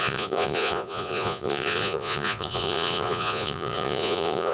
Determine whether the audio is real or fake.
fake